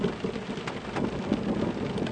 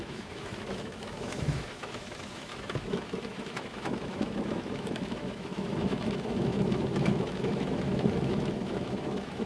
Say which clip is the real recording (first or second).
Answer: first